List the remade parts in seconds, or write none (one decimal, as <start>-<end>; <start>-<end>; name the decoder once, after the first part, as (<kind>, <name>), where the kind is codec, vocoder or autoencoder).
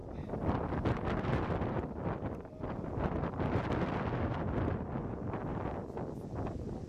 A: none